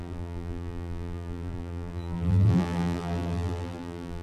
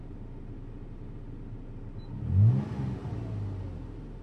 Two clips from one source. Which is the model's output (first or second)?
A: first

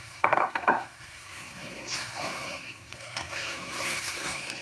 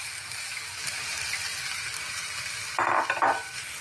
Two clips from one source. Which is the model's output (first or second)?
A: first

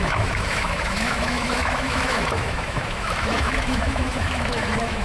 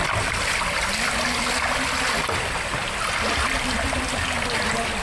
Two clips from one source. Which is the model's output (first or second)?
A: first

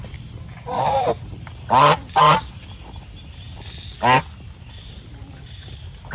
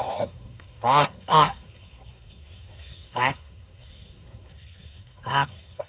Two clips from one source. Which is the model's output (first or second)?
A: second